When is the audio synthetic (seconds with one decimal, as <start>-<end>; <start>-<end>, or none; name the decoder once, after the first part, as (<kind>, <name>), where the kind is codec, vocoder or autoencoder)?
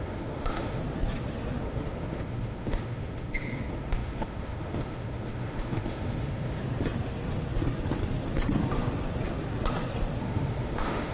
0.0-0.8 (autoencoder, DAC-VAE); 1.6-6.6; 10.2-11.1